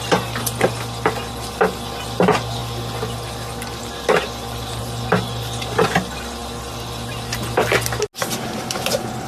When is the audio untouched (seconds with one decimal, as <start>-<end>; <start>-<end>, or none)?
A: 0.0-9.3

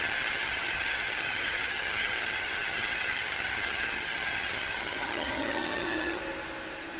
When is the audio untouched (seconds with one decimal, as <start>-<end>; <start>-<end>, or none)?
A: 6.2-7.0

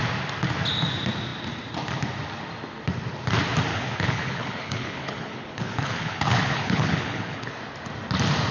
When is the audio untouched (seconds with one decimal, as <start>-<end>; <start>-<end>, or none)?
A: 0.0-3.7; 7.6-8.5

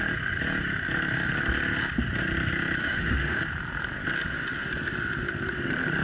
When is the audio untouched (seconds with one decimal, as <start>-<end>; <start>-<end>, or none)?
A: 0.0-2.8; 3.4-6.0

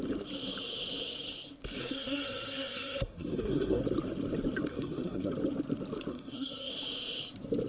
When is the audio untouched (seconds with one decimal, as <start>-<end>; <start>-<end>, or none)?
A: 0.0-1.8; 3.8-4.7; 5.3-6.1; 6.7-7.7

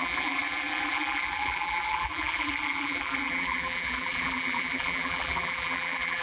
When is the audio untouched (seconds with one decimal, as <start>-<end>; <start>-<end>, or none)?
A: none

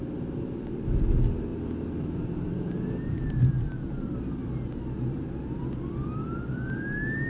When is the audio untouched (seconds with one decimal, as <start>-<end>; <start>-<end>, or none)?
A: 0.0-7.3